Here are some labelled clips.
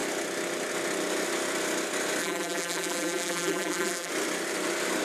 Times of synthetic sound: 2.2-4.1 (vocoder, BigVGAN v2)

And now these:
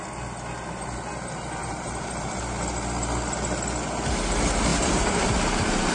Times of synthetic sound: 1.6-2.4 (vocoder, BigVGAN v2); 4.7-5.9

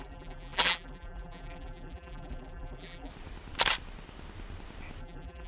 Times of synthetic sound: 0.0-3.1 (vocoder, BigVGAN v2); 5.0-5.5

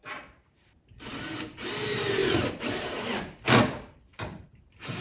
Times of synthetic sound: 0.0-1.0 (vocoder, BigVGAN v2); 4.1-5.0

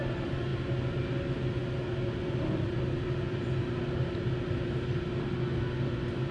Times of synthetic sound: none

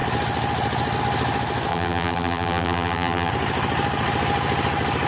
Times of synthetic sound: 1.7-3.3 (vocoder, BigVGAN v2)

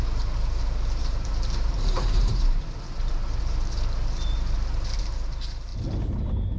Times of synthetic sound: 0.0-5.7 (vocoder, BigVGAN v2)